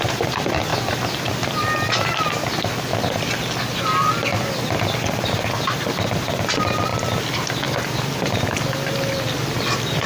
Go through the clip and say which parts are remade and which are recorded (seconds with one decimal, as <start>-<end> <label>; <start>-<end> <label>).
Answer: 0.0-10.1 recorded